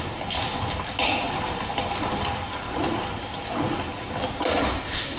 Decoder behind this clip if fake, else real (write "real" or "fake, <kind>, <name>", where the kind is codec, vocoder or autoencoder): real